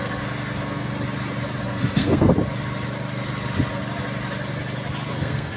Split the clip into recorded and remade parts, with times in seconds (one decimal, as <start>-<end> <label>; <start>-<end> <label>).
0.0-0.9 remade; 0.9-1.6 recorded; 1.6-2.3 remade; 2.3-5.1 recorded; 5.1-5.6 remade